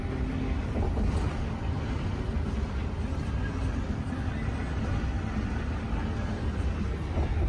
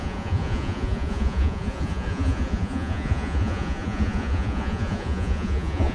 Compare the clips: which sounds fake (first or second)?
second